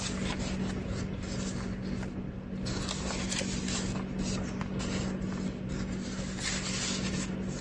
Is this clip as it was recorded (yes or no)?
yes